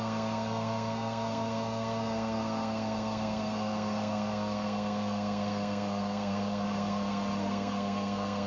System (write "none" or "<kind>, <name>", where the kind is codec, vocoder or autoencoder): codec, SNAC